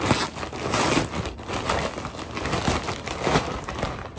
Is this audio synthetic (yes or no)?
no